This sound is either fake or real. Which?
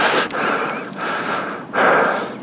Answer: real